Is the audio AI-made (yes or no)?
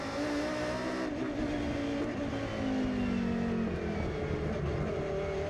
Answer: no